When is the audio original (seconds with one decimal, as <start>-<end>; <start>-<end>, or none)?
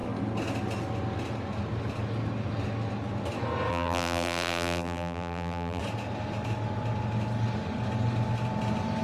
0.0-3.7; 5.8-9.0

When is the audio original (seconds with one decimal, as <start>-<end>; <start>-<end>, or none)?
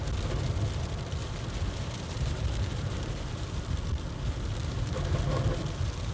0.0-1.2; 3.6-4.6; 5.2-6.1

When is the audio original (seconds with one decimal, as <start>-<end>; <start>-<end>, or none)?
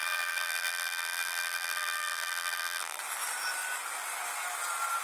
3.0-5.0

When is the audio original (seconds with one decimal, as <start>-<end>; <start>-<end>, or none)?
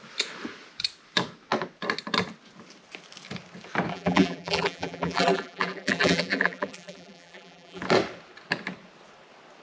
0.0-3.9; 7.8-9.6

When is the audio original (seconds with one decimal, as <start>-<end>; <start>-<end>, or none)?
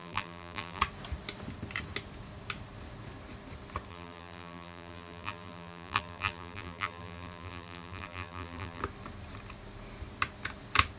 0.8-3.9; 8.8-11.0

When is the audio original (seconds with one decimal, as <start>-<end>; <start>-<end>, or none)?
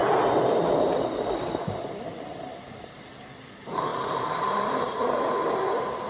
3.2-3.9; 4.6-6.1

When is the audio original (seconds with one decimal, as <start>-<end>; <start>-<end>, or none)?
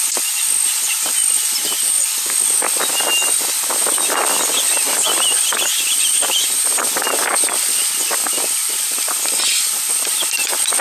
0.0-5.7; 6.9-10.8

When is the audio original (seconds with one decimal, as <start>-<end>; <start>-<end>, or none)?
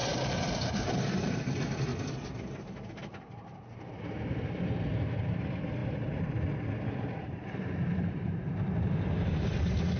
1.9-4.3; 5.8-6.7